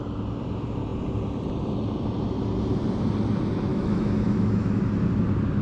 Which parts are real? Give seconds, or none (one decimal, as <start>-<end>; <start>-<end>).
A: 0.0-3.7; 4.8-5.6